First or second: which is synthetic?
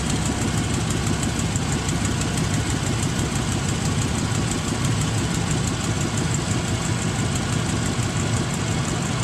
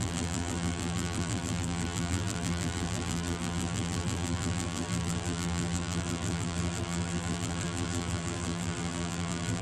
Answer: second